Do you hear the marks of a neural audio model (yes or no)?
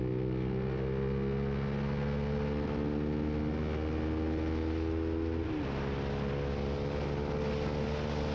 no